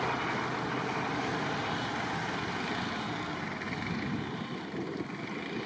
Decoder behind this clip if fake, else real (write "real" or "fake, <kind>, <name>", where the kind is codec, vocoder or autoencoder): real